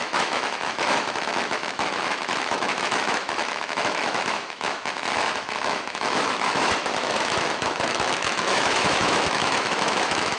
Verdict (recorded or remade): remade